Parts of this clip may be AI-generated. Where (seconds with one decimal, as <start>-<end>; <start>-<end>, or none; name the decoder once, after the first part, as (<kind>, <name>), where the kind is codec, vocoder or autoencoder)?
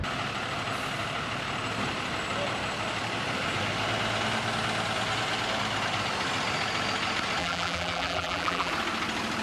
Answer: 7.4-8.7 (vocoder, BigVGAN v2)